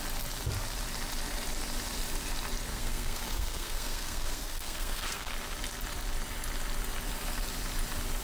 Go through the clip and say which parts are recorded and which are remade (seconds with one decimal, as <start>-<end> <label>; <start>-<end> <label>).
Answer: 0.0-2.7 recorded; 2.7-5.3 remade; 5.3-8.2 recorded